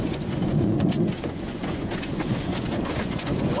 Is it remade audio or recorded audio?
remade